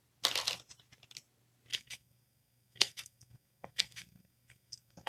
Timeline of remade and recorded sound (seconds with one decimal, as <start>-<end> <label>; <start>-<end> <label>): 0.0-1.7 recorded; 1.7-5.1 remade